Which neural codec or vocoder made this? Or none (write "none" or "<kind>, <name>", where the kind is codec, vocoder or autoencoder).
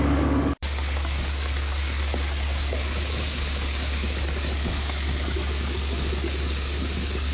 codec, DAC